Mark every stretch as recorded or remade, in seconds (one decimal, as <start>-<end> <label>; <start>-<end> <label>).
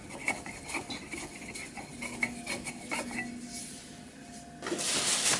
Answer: 0.0-5.4 recorded